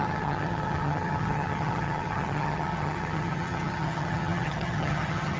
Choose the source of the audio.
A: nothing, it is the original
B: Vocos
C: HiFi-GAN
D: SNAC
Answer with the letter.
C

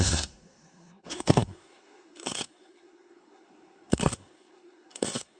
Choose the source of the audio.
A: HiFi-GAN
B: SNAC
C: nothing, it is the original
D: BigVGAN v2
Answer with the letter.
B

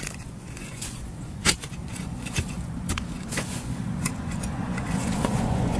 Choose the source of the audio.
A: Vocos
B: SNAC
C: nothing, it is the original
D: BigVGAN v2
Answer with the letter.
A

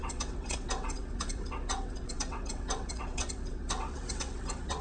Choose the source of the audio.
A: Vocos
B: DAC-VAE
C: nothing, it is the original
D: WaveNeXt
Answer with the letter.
D